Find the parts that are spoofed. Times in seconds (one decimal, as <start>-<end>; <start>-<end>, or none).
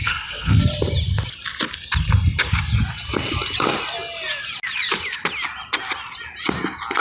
0.0-0.6